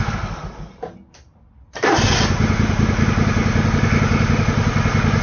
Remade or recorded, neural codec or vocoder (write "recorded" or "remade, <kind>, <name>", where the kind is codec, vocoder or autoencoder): recorded